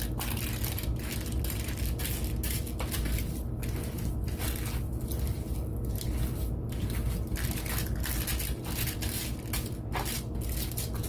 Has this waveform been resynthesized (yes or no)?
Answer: no